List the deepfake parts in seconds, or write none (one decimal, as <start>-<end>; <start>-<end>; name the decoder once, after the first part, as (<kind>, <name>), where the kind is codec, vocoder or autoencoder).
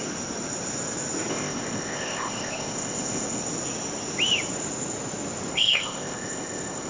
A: 1.3-3.4 (codec, ZipCodec); 5.5-6.9